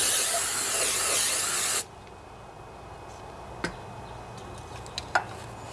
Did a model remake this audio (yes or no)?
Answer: no